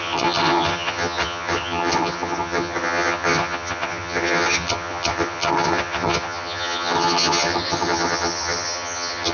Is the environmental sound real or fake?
fake